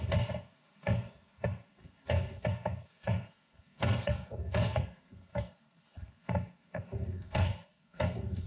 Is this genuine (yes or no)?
no